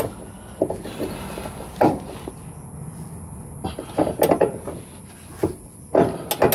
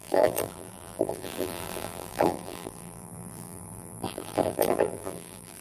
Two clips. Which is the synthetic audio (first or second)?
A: second